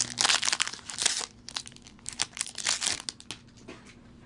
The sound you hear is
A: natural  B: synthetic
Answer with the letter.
A